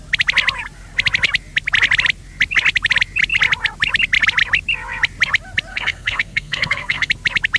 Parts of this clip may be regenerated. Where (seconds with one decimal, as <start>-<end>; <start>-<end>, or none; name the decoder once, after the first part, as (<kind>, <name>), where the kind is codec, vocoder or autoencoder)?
5.7-7.1 (codec, SNAC)